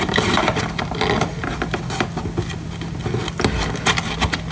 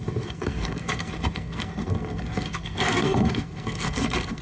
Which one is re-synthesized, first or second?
second